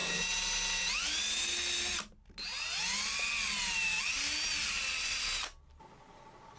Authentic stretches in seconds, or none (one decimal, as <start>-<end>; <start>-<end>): 0.0-6.6